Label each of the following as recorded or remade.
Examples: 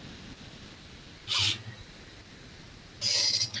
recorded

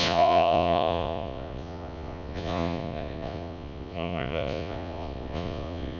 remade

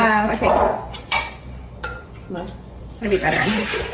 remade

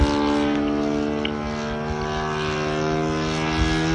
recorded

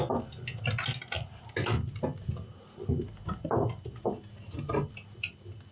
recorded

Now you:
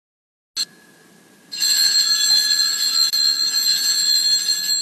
recorded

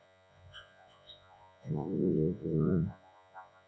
remade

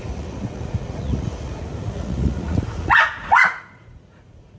remade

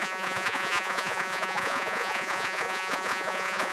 remade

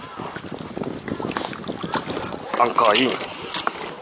recorded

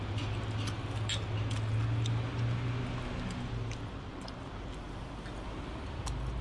recorded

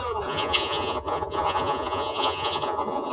remade